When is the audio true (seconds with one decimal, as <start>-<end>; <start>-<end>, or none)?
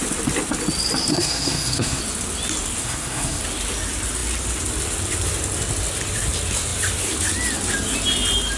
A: 0.0-1.1; 2.0-2.8; 3.4-8.6